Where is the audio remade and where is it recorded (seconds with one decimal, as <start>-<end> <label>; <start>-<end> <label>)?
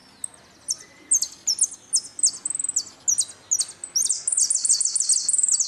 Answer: 0.0-5.7 recorded